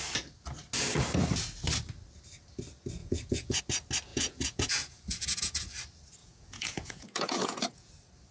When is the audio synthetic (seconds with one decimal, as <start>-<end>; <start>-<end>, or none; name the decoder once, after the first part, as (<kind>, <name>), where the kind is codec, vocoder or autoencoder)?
3.0-3.6 (vocoder, Vocos); 4.1-5.7; 6.2-7.9